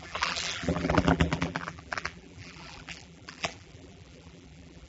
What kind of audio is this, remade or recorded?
remade